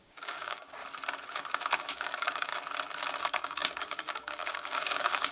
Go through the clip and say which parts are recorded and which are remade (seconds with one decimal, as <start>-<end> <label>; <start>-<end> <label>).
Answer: 0.0-0.8 remade; 0.8-1.9 recorded; 1.9-2.5 remade; 2.5-3.2 recorded; 3.2-5.3 remade